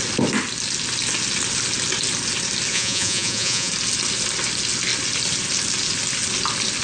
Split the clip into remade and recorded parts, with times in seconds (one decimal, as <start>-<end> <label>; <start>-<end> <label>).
0.0-2.7 recorded; 2.7-3.7 remade; 3.7-6.8 recorded